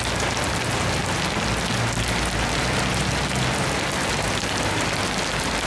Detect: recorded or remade recorded